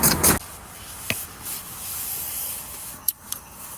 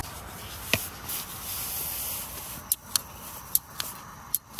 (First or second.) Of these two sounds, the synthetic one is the first